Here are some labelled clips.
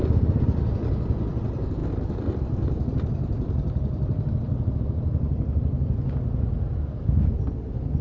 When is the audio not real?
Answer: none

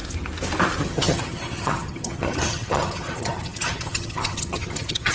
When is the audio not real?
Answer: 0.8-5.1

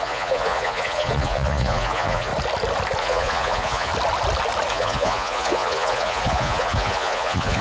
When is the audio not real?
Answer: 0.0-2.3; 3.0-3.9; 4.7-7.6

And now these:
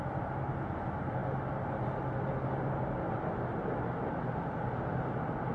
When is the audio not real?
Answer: none

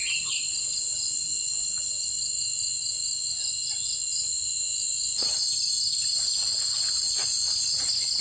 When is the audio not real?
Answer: 4.8-5.4

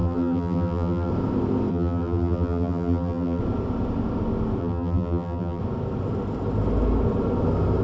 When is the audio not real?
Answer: 0.0-1.1; 1.7-3.4; 4.6-5.6